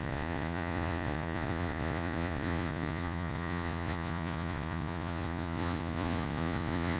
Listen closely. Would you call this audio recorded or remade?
remade